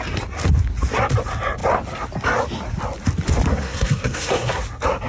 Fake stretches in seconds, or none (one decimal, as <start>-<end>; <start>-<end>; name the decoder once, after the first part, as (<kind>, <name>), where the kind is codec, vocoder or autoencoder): 3.5-4.6 (codec, SNAC)